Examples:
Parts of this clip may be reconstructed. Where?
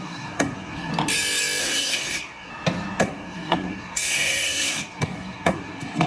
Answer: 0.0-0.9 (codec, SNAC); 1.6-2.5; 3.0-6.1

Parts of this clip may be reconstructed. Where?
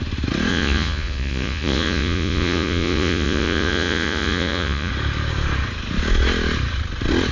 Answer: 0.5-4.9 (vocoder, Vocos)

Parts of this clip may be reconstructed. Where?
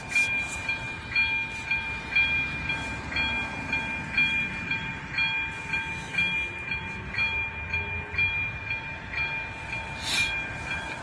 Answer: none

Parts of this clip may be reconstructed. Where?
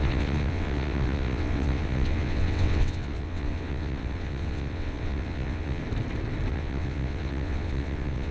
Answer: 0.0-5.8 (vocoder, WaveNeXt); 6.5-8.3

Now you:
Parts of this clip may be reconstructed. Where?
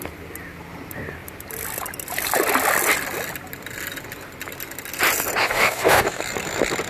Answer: 5.4-6.2 (codec, DAC)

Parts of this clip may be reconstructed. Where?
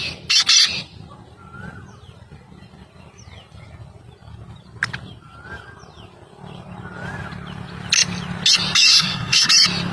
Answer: 8.9-9.5 (codec, SNAC)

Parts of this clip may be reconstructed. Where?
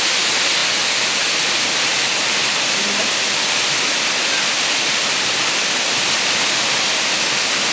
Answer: none